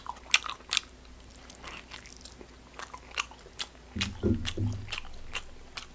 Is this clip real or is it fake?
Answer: real